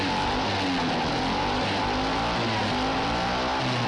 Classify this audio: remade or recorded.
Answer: recorded